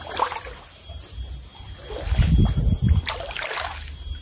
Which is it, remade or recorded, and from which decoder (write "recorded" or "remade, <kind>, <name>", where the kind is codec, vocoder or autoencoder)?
recorded